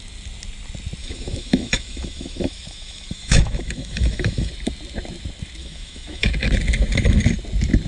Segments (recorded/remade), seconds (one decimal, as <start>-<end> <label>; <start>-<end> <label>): 0.0-1.0 recorded; 1.0-4.5 remade; 4.5-5.6 recorded; 5.6-6.3 remade; 6.3-7.9 recorded